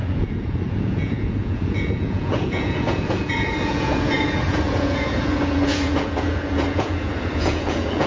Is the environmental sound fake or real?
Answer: fake